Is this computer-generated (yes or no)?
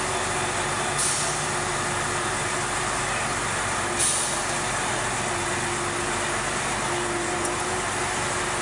no